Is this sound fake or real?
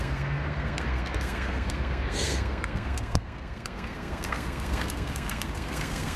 fake